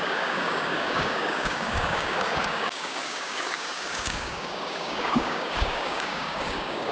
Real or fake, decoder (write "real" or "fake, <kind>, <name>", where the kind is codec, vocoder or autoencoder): fake, codec, DAC